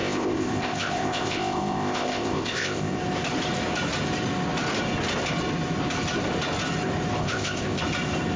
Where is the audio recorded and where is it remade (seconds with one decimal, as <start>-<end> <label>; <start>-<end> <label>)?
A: 0.0-3.0 remade; 3.0-7.2 recorded; 7.2-7.8 remade; 7.8-8.4 recorded